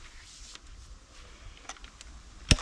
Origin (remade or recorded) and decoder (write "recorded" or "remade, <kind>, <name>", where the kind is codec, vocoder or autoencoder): recorded